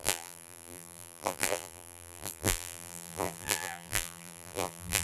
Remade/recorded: remade